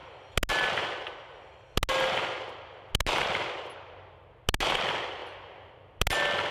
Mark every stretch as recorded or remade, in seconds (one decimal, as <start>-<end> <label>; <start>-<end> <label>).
0.0-6.5 recorded